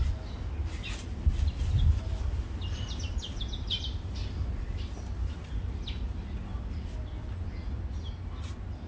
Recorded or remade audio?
recorded